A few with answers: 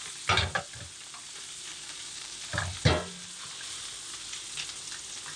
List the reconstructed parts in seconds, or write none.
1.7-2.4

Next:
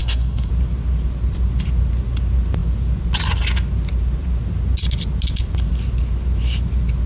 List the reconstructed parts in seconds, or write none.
0.0-0.5

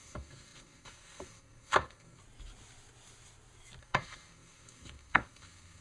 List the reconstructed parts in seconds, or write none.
0.0-2.2; 3.8-5.8

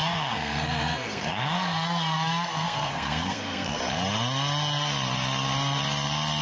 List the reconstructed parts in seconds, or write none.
0.0-3.8